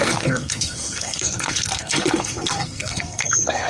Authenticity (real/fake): fake